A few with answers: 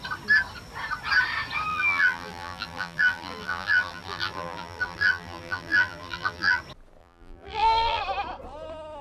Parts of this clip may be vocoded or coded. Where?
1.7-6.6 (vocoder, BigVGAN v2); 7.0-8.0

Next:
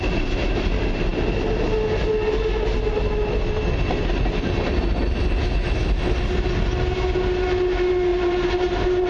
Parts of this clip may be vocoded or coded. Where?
none

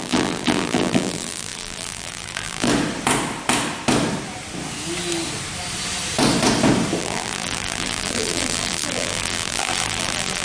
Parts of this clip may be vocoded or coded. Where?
0.0-2.7 (vocoder, BigVGAN v2); 7.0-10.4

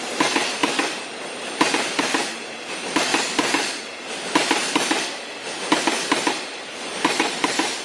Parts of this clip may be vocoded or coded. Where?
0.0-0.6 (vocoder, BigVGAN v2); 1.7-3.1; 6.3-7.8